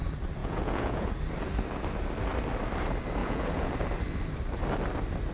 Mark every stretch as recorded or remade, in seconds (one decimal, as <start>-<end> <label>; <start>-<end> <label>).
0.0-0.4 recorded; 0.4-1.1 remade; 1.1-3.2 recorded; 3.2-3.7 remade; 3.7-5.3 recorded